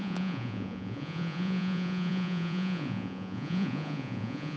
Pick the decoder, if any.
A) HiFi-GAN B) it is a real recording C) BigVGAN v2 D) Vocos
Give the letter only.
D